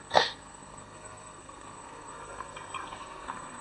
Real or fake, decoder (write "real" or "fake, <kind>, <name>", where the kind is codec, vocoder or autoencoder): fake, codec, SNAC